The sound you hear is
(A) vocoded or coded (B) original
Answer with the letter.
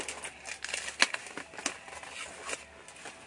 B